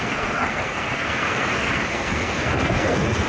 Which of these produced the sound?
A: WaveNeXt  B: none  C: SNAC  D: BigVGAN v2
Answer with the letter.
C